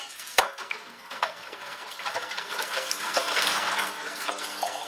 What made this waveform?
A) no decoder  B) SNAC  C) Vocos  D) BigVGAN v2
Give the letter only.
B